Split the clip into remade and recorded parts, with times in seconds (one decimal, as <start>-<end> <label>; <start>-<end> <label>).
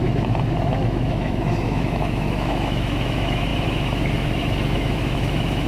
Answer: 0.0-5.7 remade